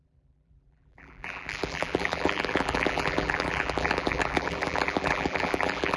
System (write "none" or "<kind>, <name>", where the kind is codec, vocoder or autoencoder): vocoder, BigVGAN v2